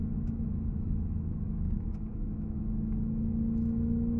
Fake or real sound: fake